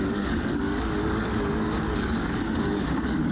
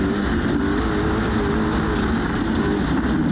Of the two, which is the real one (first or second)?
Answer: second